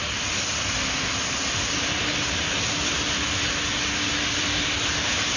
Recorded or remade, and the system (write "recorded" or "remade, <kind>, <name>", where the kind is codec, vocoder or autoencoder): recorded